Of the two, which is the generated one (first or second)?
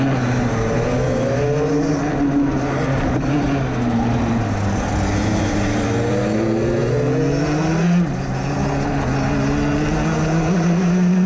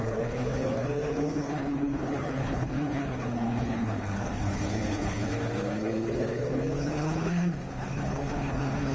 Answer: second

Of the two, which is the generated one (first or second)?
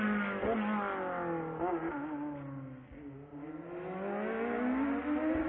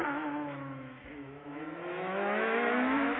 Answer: second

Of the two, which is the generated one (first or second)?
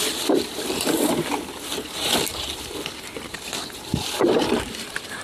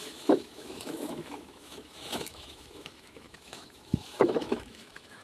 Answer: second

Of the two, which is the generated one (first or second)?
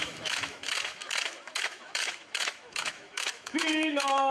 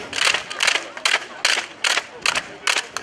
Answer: first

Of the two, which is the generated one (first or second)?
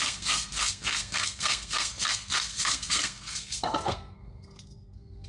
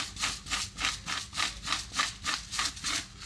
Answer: first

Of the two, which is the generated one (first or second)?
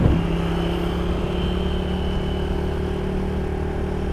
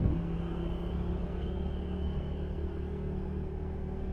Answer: second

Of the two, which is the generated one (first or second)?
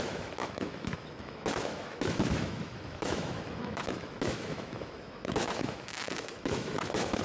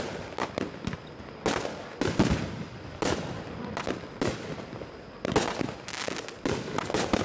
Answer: first